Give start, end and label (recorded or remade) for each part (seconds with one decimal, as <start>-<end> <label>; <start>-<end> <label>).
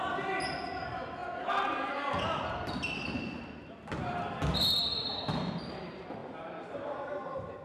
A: 0.0-6.2 recorded; 6.2-7.0 remade; 7.0-7.6 recorded